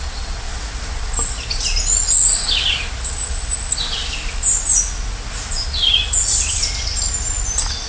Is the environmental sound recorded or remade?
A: recorded